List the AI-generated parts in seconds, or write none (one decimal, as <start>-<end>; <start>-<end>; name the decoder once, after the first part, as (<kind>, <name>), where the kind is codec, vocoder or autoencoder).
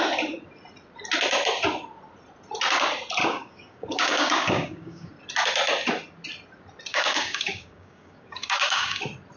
3.2-5.1 (codec, DAC); 6.9-9.0